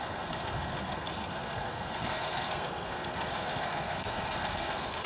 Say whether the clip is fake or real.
fake